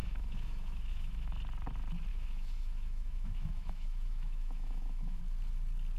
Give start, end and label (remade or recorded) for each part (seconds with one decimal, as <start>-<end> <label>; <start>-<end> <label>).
0.0-1.3 remade; 1.3-2.1 recorded; 2.1-5.2 remade; 5.2-6.0 recorded